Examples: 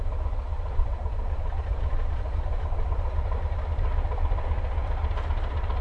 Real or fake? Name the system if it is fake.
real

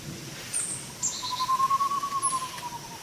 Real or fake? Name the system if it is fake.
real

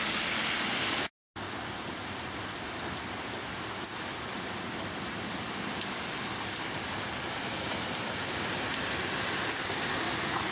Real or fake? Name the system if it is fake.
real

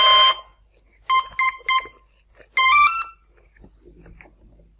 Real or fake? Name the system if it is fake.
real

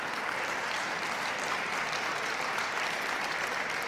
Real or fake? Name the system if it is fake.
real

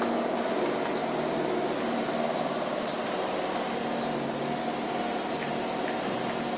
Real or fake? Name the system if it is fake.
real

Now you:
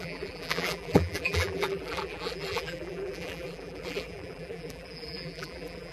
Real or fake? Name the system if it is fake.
fake, vocoder, BigVGAN v2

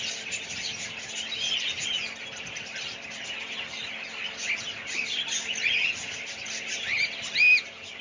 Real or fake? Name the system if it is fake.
real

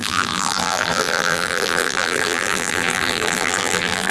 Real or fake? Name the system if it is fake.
fake, vocoder, BigVGAN v2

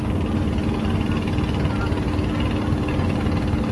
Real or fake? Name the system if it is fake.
real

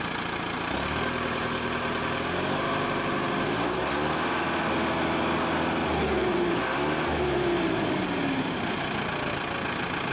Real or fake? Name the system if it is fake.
real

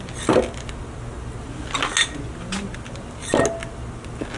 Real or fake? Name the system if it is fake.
real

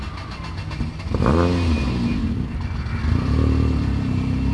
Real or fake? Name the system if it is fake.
real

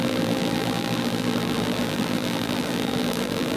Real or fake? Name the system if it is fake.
fake, vocoder, BigVGAN v2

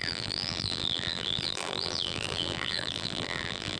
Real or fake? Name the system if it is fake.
fake, vocoder, BigVGAN v2